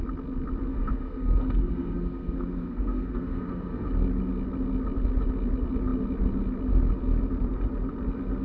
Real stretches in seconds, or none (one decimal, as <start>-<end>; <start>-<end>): 0.0-0.7; 3.9-8.4